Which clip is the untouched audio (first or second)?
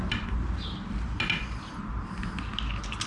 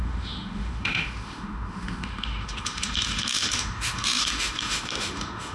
first